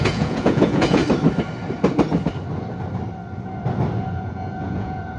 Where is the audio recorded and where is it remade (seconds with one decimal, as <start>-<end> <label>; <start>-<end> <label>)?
0.0-1.0 remade; 1.0-4.1 recorded; 4.1-5.2 remade